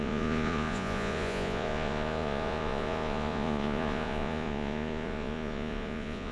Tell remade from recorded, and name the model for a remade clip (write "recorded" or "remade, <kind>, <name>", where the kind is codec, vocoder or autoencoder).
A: remade, vocoder, Vocos